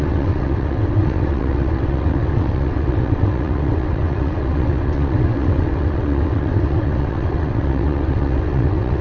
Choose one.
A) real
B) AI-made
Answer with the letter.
B